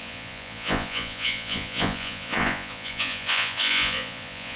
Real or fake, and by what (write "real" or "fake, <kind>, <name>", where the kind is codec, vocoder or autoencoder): fake, vocoder, Vocos